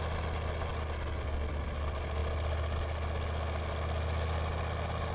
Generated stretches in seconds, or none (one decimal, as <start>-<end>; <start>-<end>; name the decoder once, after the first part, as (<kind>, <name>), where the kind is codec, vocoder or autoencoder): none